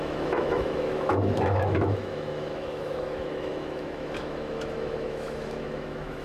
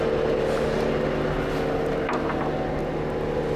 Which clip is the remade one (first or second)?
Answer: first